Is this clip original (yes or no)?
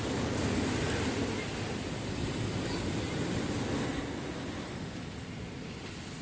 yes